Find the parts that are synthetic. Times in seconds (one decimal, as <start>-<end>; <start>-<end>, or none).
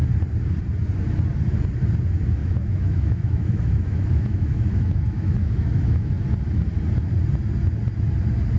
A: 2.4-6.1